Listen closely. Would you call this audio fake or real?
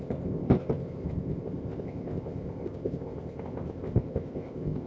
fake